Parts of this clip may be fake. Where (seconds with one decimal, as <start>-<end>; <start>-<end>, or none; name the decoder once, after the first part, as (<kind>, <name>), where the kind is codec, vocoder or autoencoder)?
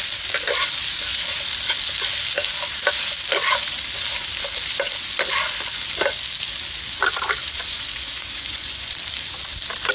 7.4-8.9 (vocoder, Vocos)